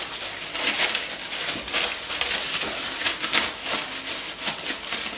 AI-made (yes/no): no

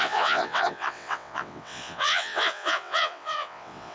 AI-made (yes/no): yes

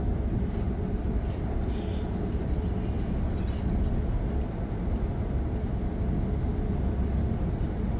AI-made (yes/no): no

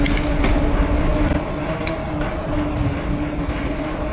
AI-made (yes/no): no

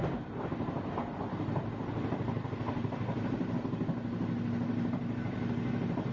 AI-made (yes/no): no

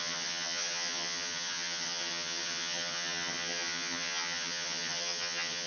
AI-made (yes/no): yes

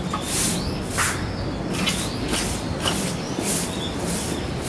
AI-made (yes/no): no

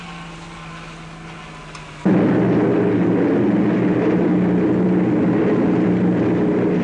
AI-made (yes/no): no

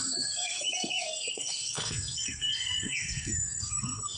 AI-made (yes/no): yes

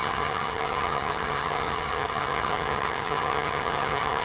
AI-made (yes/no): yes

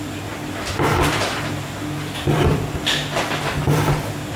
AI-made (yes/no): no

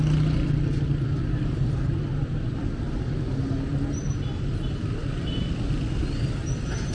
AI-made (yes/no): no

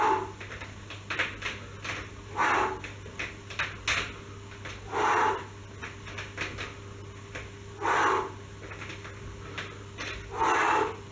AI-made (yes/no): no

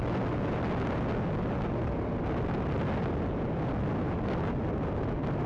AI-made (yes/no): no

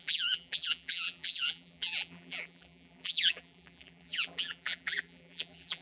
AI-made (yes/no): yes